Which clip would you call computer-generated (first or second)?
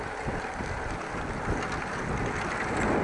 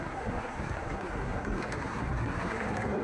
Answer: second